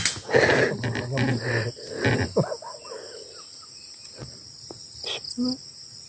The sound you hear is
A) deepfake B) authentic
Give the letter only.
B